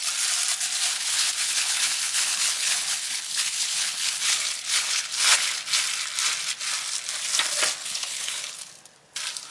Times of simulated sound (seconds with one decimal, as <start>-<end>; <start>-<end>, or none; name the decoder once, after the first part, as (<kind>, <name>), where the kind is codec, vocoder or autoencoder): 0.9-5.6 (codec, HILCodec); 7.8-8.7